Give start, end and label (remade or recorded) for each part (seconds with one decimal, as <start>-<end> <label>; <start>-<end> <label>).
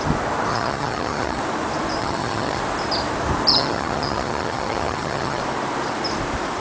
0.0-0.5 recorded; 0.5-1.4 remade; 1.4-2.0 recorded; 2.0-2.6 remade; 2.6-3.5 recorded; 3.5-5.4 remade; 5.4-6.6 recorded